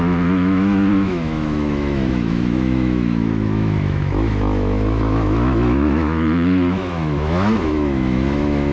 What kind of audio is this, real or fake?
fake